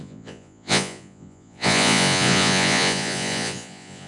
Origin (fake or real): fake